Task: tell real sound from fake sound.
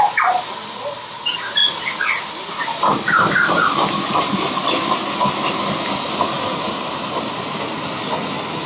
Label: real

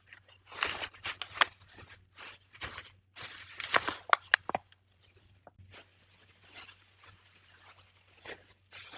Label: real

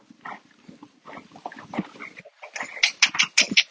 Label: real